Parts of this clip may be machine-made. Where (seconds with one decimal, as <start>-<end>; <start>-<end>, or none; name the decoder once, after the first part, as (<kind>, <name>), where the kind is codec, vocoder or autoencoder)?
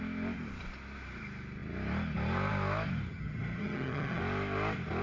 3.1-4.2 (vocoder, HiFi-GAN)